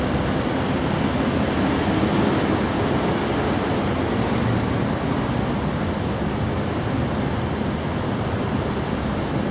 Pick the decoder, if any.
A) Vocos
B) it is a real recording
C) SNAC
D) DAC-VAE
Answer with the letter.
B